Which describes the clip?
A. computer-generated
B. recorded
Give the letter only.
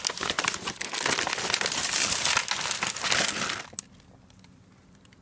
B